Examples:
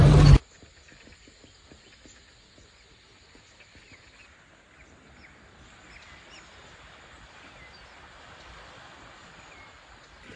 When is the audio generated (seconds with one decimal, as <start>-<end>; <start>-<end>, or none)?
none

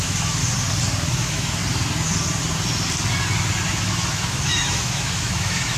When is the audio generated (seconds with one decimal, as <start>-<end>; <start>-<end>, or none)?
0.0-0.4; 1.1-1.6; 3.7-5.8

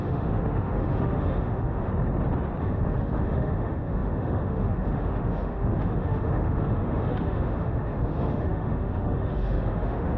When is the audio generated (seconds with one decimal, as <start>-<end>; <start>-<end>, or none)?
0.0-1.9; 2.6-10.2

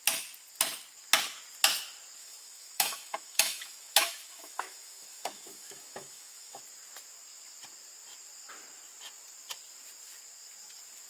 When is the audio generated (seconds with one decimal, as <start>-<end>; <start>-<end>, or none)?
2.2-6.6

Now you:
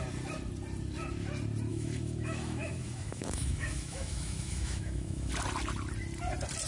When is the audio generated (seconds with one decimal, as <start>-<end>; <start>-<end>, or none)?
1.7-5.3

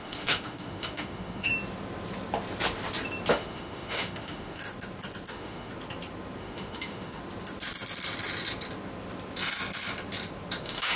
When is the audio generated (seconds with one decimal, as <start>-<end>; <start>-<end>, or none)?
0.0-1.5; 3.3-4.6; 5.3-5.7; 6.4-7.2; 10.6-11.0

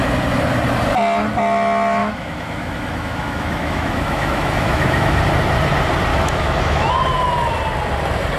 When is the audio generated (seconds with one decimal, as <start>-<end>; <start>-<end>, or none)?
2.0-5.2; 6.1-6.9

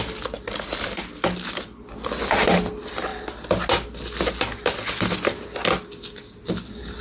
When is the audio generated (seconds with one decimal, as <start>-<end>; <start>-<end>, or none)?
none